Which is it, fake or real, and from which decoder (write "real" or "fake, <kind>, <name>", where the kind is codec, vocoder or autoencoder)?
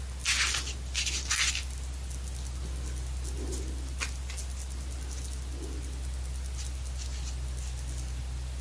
real